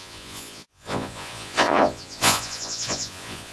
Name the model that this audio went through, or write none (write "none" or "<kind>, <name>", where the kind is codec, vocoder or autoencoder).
vocoder, Vocos